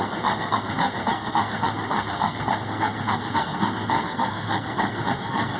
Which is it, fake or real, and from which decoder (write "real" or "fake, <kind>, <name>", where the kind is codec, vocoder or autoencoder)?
fake, codec, SNAC